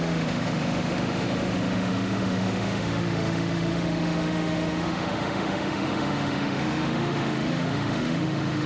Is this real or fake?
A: fake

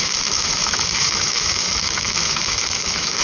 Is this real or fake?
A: fake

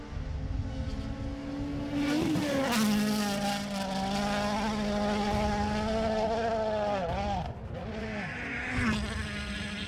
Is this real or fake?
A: real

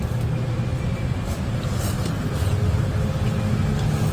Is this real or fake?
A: real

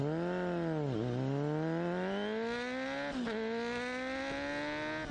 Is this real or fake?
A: real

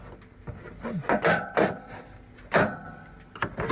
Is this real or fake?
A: real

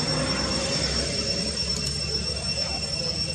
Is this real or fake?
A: real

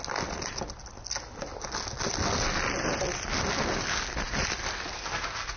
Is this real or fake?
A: real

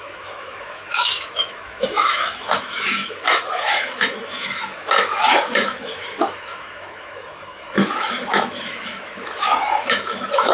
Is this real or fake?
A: fake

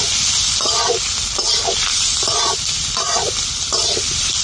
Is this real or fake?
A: real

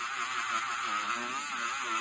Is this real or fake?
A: real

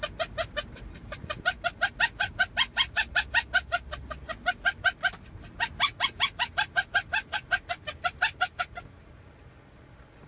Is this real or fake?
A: real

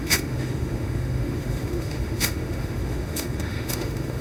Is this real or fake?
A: fake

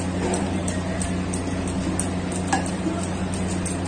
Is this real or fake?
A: real